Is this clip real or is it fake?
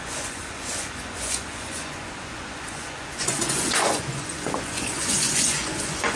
fake